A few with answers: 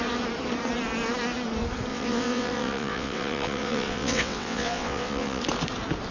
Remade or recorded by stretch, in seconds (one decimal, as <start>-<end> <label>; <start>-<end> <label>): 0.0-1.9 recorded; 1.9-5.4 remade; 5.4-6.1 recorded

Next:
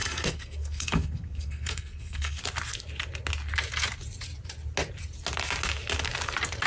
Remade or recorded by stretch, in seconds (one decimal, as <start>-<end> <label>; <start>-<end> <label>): 0.0-2.4 remade; 2.4-6.7 recorded

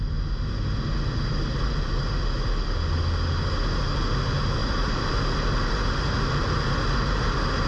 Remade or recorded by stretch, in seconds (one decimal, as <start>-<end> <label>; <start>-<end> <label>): 0.0-4.6 recorded; 4.6-5.2 remade; 5.2-7.7 recorded

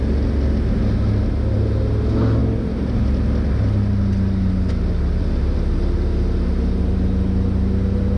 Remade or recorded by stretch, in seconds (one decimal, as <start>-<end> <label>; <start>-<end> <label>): 0.0-8.2 recorded